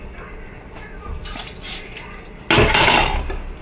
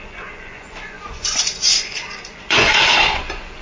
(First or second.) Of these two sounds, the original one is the first